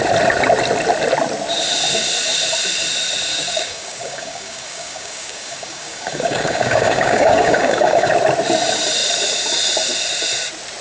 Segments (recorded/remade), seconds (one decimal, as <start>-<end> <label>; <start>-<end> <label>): 0.0-3.3 recorded; 3.3-8.1 remade; 8.1-10.8 recorded